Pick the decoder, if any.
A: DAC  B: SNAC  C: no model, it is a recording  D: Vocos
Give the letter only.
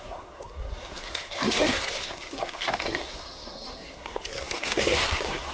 B